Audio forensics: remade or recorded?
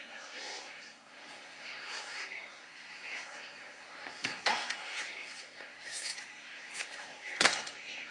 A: remade